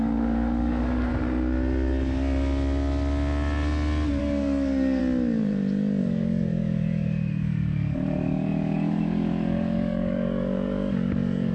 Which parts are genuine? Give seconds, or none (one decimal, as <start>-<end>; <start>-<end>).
1.1-4.2; 5.0-6.0